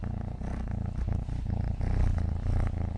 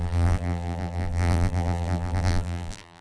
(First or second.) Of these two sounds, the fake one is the second